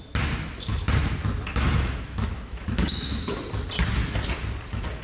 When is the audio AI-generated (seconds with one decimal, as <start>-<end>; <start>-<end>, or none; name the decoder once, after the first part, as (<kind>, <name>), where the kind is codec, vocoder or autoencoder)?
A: 1.5-3.4 (autoencoder, DAC-VAE)